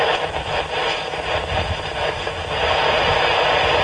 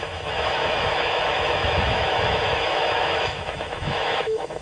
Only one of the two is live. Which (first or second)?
first